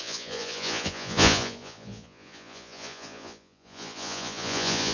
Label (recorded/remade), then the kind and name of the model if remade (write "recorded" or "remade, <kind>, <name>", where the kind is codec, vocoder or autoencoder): remade, vocoder, Vocos